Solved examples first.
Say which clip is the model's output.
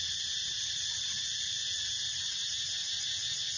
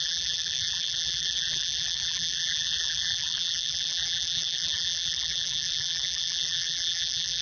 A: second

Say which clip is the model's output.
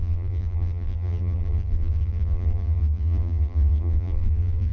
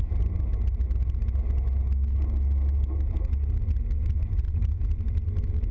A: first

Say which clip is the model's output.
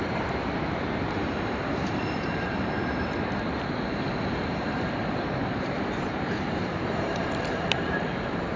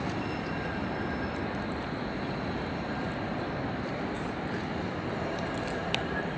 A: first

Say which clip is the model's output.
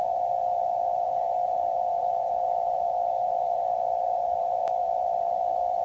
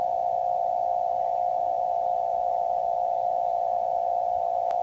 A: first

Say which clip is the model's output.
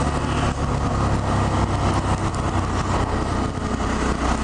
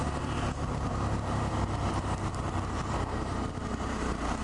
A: second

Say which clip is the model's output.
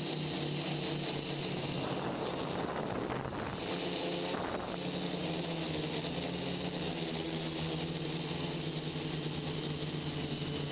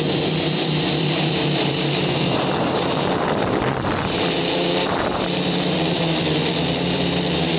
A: second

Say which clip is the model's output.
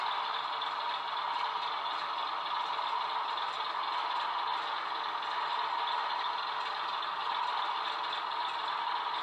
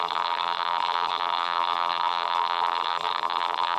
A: second